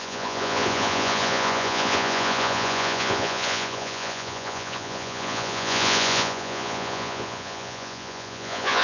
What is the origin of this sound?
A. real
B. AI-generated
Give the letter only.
B